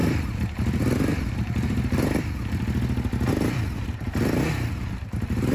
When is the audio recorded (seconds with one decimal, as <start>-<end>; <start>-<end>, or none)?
none